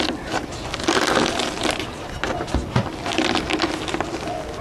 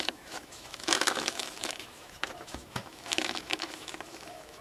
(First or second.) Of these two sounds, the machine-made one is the second